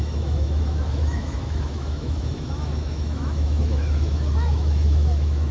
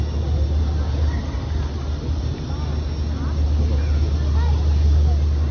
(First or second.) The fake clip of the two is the first